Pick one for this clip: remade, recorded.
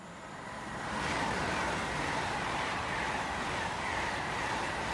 remade